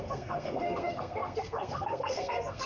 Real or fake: fake